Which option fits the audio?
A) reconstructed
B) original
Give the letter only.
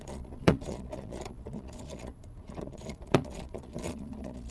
A